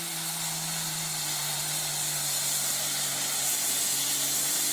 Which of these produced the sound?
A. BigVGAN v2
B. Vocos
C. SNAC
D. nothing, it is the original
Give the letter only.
D